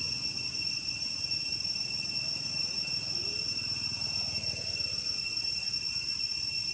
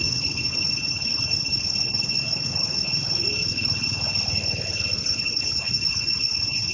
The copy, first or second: second